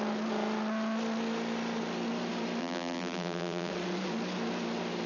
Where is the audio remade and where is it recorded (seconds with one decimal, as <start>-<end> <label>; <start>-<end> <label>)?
0.0-2.6 recorded; 2.6-3.7 remade; 3.7-5.1 recorded